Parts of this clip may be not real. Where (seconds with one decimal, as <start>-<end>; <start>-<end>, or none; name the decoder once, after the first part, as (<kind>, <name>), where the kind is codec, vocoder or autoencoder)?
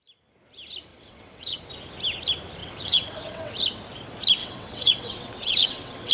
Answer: 0.9-1.7 (vocoder, WaveNeXt); 2.6-3.5; 4.4-6.1